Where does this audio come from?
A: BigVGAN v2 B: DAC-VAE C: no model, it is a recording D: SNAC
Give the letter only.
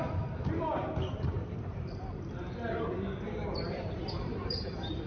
A